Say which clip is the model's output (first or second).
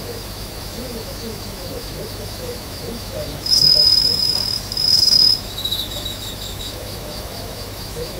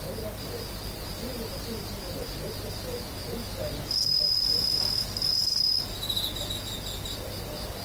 first